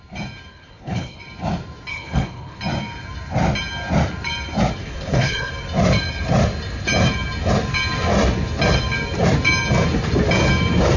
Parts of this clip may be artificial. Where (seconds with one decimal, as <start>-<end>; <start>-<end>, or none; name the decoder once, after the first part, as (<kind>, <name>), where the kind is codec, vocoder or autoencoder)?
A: 0.5-1.2 (codec, HILCodec); 1.9-2.6; 4.8-5.5